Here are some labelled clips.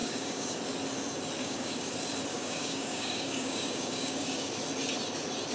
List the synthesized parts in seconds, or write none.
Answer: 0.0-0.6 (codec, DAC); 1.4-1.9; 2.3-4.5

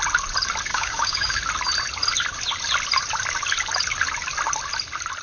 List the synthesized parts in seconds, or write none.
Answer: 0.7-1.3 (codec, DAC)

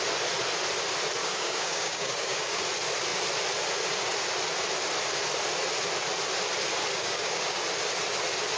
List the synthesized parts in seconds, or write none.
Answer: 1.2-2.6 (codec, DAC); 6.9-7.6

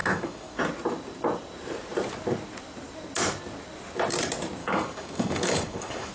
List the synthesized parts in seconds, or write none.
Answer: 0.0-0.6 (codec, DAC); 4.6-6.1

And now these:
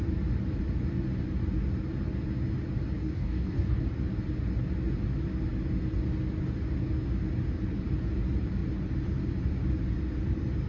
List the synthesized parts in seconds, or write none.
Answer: 3.0-3.8 (codec, DAC)

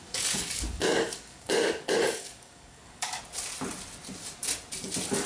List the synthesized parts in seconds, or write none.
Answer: 0.0-3.2 (codec, DAC)

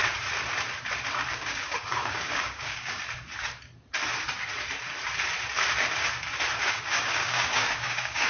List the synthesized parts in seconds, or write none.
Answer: 1.3-3.0 (codec, DAC); 6.6-8.3

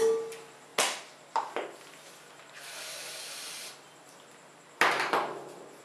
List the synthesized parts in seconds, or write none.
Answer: none